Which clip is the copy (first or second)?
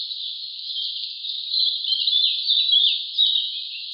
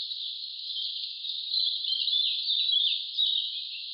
second